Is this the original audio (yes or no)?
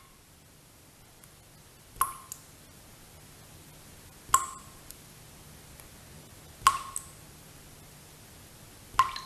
yes